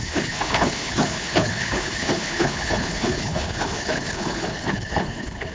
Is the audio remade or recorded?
remade